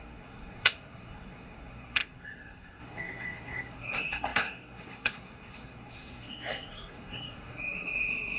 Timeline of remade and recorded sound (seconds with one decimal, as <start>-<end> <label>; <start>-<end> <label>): 0.0-8.4 remade

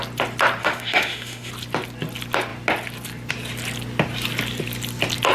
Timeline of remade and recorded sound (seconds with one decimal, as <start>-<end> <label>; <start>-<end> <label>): 0.0-0.6 recorded; 0.6-1.5 remade; 1.5-5.3 recorded

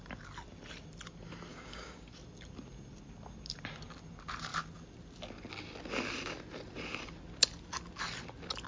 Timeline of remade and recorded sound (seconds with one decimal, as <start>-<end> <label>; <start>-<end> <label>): 0.0-1.5 recorded; 1.5-2.1 remade; 2.1-8.7 recorded

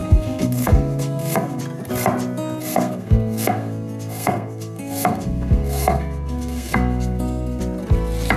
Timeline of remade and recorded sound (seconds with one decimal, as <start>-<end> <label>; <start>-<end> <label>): 0.0-1.6 remade; 1.6-2.6 recorded; 2.6-7.6 remade; 7.6-8.4 recorded